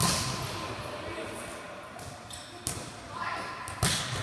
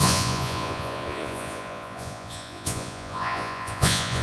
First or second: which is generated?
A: second